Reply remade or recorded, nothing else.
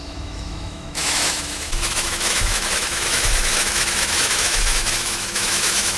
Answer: remade